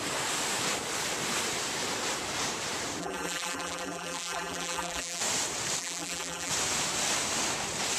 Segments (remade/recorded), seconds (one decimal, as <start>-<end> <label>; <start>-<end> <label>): 0.0-3.0 recorded; 3.0-5.2 remade; 5.2-5.8 recorded; 5.8-6.5 remade; 6.5-8.0 recorded